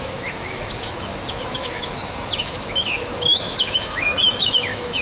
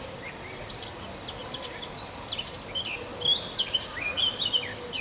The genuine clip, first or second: second